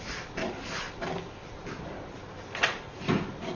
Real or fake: real